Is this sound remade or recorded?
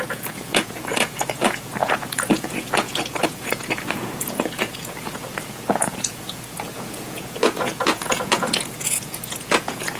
remade